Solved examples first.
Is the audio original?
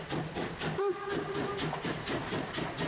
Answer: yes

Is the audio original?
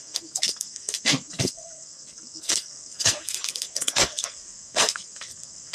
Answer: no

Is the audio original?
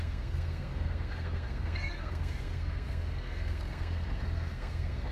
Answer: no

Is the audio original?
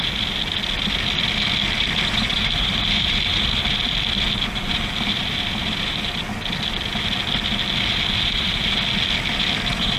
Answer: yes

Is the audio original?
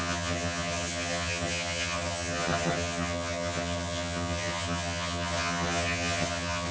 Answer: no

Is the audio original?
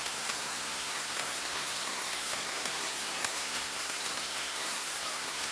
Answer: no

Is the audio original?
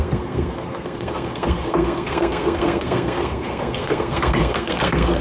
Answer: no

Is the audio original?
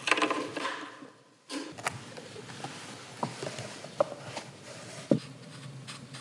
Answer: yes